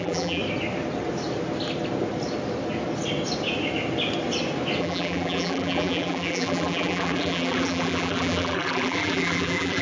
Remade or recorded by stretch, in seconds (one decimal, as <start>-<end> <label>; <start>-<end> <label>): 0.0-0.4 remade; 0.4-4.8 recorded; 4.8-9.8 remade